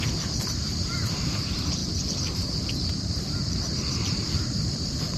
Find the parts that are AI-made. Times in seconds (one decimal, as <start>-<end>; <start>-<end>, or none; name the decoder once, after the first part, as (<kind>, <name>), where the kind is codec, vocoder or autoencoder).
0.0-5.2 (vocoder, BigVGAN v2)